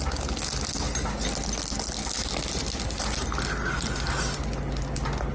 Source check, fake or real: real